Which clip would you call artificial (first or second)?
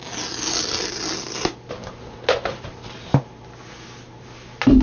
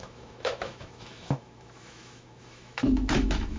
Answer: second